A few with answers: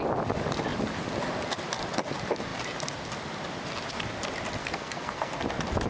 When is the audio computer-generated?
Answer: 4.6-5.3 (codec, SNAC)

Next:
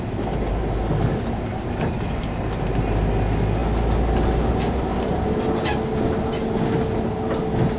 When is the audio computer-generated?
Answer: 4.9-5.4 (vocoder, BigVGAN v2)

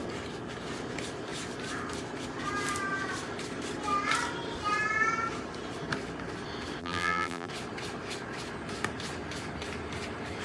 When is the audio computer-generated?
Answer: 6.8-7.5 (vocoder, BigVGAN v2)

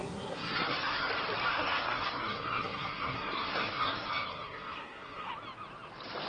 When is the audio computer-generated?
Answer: 0.0-1.1 (codec, SNAC); 1.5-5.3

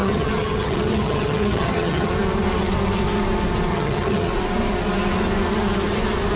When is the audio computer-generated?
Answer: 0.0-2.1 (vocoder, HiFi-GAN); 3.7-4.3

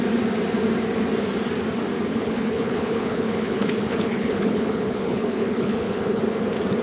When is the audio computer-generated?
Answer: 2.1-6.2 (codec, HILCodec)

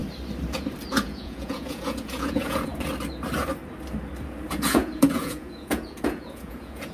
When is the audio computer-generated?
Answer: 0.9-2.7 (vocoder, Vocos); 4.5-6.9